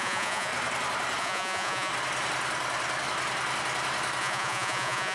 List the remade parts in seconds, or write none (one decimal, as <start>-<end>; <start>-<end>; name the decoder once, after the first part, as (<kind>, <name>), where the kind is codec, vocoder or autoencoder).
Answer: 0.0-0.5 (vocoder, Vocos); 1.2-1.9; 4.2-5.1